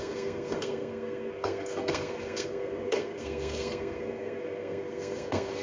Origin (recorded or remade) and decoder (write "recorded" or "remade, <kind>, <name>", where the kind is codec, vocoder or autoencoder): remade, codec, SNAC